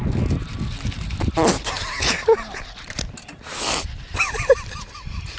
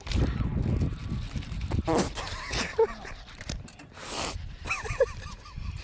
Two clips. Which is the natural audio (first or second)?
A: first